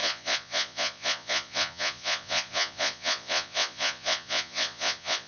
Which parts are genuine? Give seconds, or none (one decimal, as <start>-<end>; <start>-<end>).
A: none